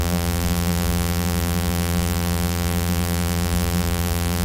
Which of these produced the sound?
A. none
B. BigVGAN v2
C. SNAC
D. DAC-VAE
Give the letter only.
B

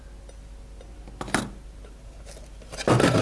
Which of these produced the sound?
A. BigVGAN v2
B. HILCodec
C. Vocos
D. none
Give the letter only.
D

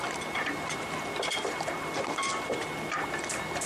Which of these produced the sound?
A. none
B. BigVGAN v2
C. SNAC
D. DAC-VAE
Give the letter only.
A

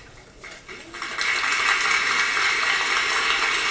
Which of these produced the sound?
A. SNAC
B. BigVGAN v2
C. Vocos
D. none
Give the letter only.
D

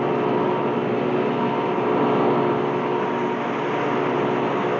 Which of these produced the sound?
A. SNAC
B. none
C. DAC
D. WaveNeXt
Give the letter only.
B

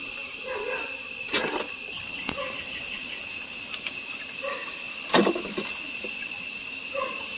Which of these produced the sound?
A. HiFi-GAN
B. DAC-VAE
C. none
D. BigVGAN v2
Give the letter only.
C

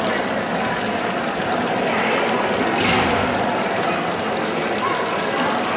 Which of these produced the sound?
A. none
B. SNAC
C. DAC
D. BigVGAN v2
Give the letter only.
A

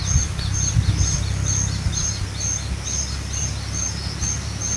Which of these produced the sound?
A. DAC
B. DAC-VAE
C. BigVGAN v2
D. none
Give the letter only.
D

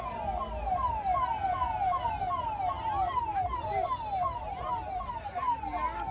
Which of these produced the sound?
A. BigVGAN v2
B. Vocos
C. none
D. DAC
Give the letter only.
C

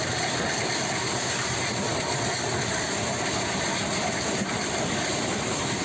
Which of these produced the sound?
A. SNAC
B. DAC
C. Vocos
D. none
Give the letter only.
D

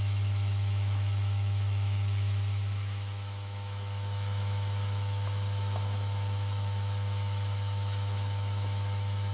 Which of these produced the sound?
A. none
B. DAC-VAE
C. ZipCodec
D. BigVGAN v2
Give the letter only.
B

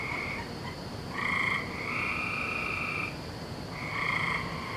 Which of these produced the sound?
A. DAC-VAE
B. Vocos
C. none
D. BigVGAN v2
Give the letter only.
D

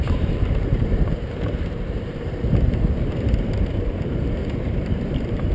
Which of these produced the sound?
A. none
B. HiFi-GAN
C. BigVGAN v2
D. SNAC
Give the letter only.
C